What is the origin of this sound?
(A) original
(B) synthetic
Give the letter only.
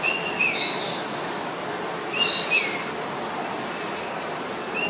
A